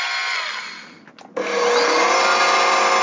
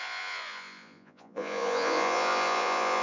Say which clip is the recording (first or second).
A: first